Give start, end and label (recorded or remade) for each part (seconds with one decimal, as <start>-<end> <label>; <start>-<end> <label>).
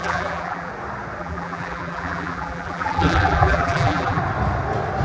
0.0-0.7 remade; 0.7-1.2 recorded; 1.2-4.2 remade; 4.2-5.0 recorded